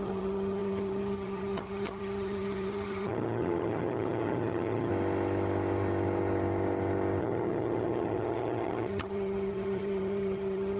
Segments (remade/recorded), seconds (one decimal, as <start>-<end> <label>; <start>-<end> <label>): 0.0-4.9 remade; 4.9-7.2 recorded; 7.2-10.8 remade

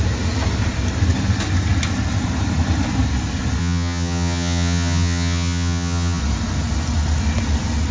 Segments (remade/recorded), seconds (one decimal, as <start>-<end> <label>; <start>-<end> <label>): 0.0-3.6 recorded; 3.6-6.2 remade; 6.2-7.9 recorded